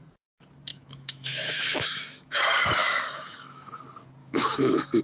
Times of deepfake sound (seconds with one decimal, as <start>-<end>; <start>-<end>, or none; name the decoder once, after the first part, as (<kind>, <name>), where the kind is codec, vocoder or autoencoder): 0.7-2.4 (autoencoder, DAC-VAE); 2.8-3.8; 4.2-5.0